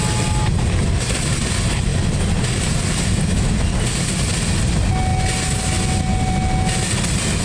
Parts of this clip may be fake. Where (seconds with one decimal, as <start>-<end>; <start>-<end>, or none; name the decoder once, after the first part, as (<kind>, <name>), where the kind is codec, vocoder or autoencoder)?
none